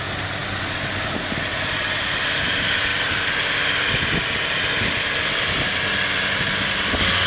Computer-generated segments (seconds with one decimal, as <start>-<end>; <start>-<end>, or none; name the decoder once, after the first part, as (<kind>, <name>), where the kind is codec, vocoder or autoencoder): none